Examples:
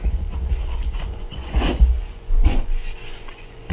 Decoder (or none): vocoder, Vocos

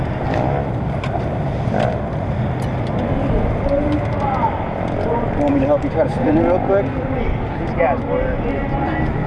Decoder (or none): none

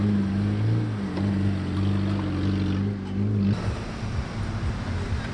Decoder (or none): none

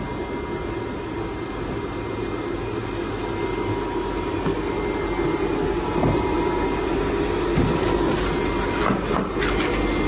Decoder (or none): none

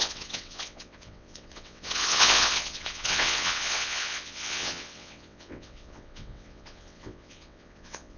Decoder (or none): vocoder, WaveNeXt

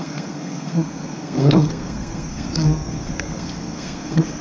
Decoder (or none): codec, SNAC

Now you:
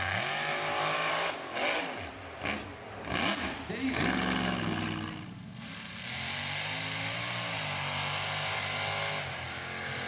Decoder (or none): none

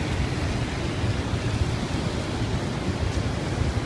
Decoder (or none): none